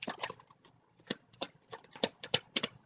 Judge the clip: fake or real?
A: fake